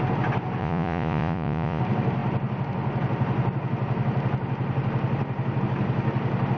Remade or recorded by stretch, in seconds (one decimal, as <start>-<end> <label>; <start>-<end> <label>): 0.0-0.6 recorded; 0.6-1.8 remade; 1.8-6.6 recorded